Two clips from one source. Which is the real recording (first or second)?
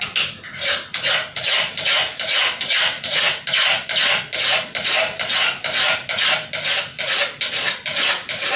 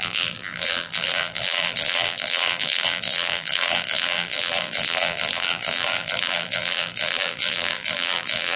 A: first